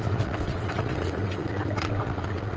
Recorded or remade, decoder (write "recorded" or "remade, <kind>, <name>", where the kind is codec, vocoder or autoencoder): remade, vocoder, WaveNeXt